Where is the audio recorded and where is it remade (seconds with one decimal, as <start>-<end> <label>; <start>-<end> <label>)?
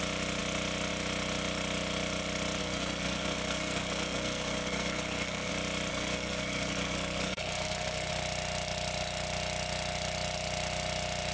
0.0-2.6 recorded; 2.6-5.5 remade; 5.5-5.9 recorded; 5.9-8.1 remade; 8.1-11.3 recorded